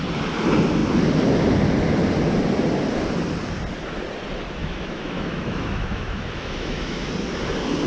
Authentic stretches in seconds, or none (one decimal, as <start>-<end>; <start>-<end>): 0.0-4.6; 7.1-7.9